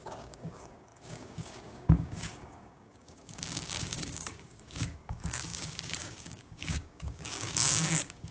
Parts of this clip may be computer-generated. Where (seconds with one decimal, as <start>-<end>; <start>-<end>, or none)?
0.0-8.3

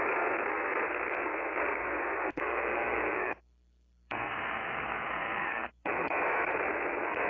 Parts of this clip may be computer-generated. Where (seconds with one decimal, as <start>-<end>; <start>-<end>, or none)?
0.0-7.3

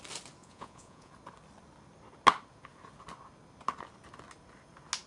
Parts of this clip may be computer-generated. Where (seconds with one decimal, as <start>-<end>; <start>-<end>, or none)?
0.4-1.1

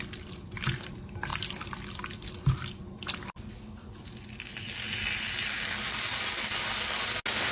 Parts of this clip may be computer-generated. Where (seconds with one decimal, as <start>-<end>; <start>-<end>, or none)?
none

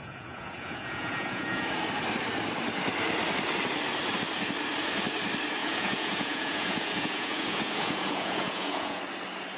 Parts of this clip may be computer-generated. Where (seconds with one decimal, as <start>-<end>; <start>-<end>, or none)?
0.0-1.7; 5.6-9.0

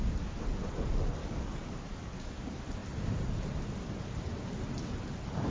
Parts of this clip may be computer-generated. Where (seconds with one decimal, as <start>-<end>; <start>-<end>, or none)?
1.2-2.4

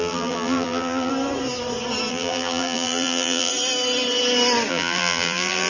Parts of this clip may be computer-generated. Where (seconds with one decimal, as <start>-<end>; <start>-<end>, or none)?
0.0-1.1; 2.1-3.5; 4.7-5.7